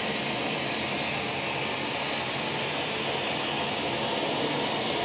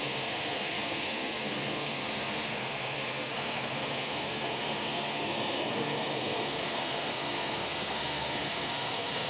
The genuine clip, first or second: first